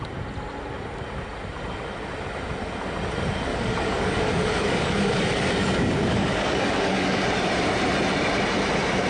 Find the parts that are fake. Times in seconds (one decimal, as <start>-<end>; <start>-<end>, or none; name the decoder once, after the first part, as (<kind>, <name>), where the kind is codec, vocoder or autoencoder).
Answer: 3.5-7.2 (codec, DAC)

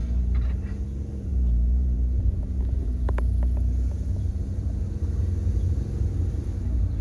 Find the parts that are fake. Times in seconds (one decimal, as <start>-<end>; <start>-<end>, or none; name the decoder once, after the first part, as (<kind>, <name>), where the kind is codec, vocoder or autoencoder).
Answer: 0.0-0.6 (vocoder, BigVGAN v2); 1.3-2.2; 2.8-5.2

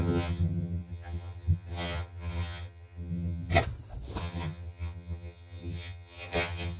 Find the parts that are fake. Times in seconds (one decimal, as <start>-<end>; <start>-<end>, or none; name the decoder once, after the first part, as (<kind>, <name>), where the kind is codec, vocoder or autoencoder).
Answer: 0.0-3.6 (vocoder, HiFi-GAN); 4.2-6.8

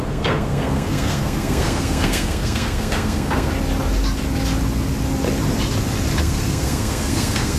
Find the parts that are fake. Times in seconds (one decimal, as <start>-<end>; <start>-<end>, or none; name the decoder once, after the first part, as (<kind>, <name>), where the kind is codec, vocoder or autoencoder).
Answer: 0.0-3.5 (codec, SNAC); 6.2-7.6

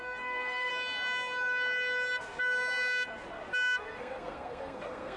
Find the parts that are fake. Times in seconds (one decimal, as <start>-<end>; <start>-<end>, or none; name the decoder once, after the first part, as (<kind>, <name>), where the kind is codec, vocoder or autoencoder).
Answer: 0.0-0.7 (codec, SNAC); 3.8-5.2